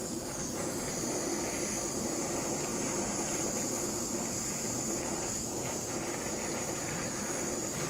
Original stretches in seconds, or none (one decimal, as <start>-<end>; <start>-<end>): 0.0-2.0